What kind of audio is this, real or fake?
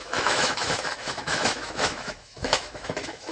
fake